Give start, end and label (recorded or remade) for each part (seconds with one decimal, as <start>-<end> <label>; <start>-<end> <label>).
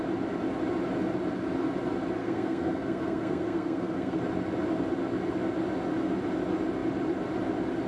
0.0-2.2 recorded; 2.2-4.2 remade; 4.2-7.9 recorded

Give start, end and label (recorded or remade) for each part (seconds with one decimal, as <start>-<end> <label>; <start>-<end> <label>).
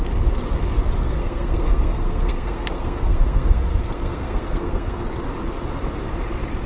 0.0-1.0 recorded; 1.0-5.0 remade; 5.0-6.7 recorded